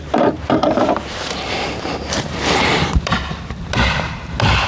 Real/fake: fake